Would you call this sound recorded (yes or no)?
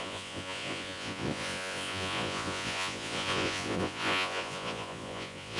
no